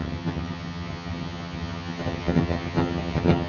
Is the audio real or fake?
fake